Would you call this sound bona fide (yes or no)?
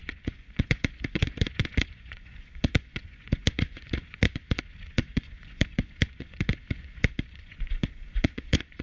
no